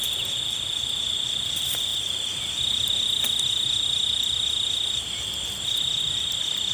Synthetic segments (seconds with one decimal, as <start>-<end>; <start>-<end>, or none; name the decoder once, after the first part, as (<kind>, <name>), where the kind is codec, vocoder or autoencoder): 1.9-2.9 (vocoder, BigVGAN v2)

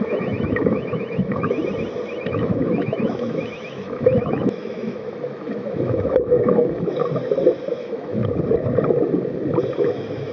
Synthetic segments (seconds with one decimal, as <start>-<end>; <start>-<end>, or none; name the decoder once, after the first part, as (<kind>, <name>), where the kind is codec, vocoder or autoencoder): 0.0-1.6 (autoencoder, DAC-VAE); 2.3-7.0; 7.7-8.2; 9.9-10.3

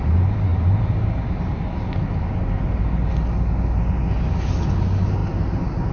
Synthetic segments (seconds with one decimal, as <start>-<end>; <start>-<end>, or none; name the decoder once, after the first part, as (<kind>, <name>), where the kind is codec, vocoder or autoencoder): none

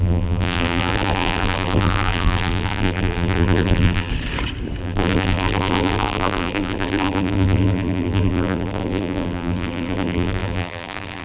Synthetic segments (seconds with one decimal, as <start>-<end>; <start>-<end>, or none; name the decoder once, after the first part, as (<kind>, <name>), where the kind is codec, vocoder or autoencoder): 0.0-4.1 (vocoder, BigVGAN v2); 4.8-11.2

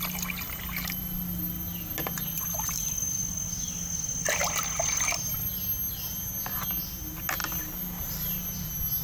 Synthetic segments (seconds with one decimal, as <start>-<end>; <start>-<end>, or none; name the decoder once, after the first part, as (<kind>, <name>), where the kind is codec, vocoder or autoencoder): none